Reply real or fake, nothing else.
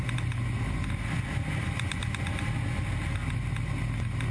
real